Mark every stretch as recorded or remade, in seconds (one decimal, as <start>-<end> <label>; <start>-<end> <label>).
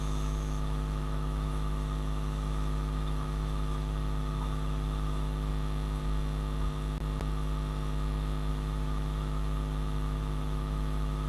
0.0-5.5 remade; 5.5-8.5 recorded; 8.5-11.3 remade